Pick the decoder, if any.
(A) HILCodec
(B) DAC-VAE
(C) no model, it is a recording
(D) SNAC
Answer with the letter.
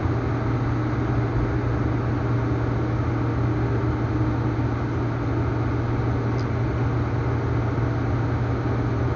C